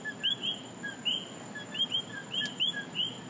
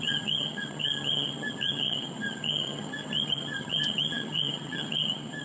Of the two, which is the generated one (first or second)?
second